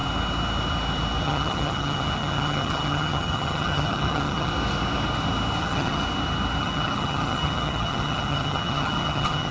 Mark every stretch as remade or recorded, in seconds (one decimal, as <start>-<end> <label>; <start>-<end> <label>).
0.0-1.2 recorded; 1.2-4.5 remade; 4.5-5.6 recorded; 5.6-6.0 remade; 6.0-6.6 recorded; 6.6-9.5 remade

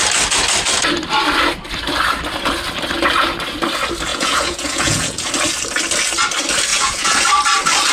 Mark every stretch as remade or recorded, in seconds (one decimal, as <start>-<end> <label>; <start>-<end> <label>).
0.0-4.1 recorded; 4.1-5.3 remade; 5.3-6.7 recorded; 6.7-7.3 remade; 7.3-7.9 recorded

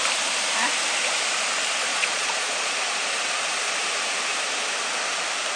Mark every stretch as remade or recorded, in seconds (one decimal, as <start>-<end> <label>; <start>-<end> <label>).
0.0-1.9 recorded; 1.9-2.8 remade; 2.8-5.6 recorded

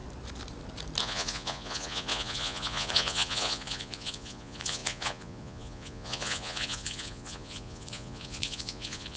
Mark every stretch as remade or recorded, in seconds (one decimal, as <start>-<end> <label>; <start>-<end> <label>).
0.0-1.0 recorded; 1.0-9.2 remade

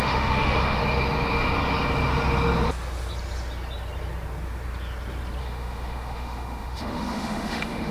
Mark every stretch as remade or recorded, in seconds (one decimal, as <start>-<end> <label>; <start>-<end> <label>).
0.0-0.8 remade; 0.8-5.4 recorded; 5.4-7.9 remade

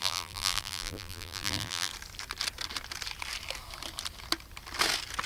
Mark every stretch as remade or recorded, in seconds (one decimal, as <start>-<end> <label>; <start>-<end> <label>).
0.0-1.9 remade; 1.9-5.3 recorded

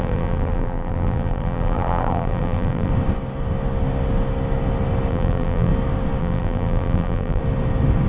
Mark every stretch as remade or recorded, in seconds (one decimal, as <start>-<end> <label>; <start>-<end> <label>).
0.0-2.9 remade; 2.9-5.1 recorded; 5.1-5.7 remade; 5.7-6.2 recorded; 6.2-7.4 remade; 7.4-8.1 recorded

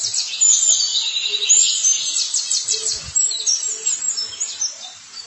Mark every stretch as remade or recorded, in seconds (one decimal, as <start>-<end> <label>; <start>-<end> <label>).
0.0-5.3 recorded